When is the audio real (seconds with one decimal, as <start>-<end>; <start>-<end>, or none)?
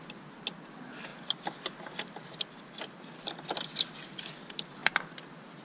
0.0-4.8